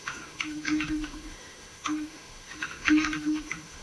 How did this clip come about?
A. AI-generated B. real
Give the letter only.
A